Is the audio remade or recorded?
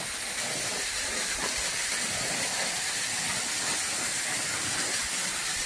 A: recorded